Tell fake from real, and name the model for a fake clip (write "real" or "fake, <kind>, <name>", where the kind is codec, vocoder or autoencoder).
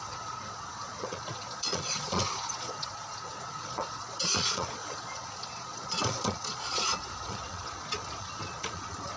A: fake, vocoder, Vocos